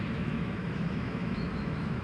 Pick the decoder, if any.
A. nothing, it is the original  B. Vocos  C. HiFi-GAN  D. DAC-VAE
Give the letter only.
D